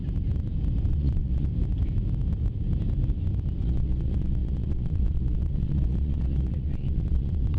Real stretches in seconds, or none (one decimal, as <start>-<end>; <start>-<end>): 0.0-0.9; 1.5-3.6